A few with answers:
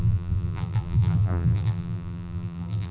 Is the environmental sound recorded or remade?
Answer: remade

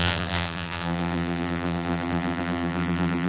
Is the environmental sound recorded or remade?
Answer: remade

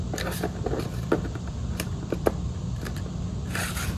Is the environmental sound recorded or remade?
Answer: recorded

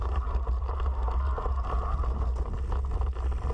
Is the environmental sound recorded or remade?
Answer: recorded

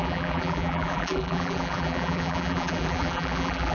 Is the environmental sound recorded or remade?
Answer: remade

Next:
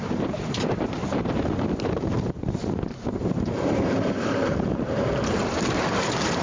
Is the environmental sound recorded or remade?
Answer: remade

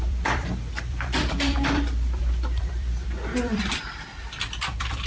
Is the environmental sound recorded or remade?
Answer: remade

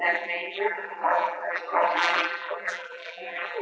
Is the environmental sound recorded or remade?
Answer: remade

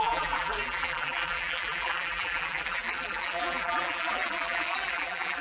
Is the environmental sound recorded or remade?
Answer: remade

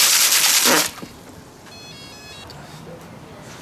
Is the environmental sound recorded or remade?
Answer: recorded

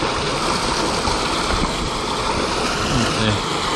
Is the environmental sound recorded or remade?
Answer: recorded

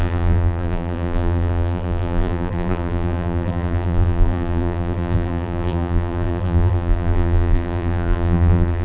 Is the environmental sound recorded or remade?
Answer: remade